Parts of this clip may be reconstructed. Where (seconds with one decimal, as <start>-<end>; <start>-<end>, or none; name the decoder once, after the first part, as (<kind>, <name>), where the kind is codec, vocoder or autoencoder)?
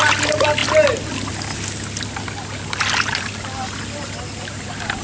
none